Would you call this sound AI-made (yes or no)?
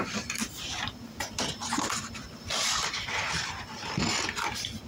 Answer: yes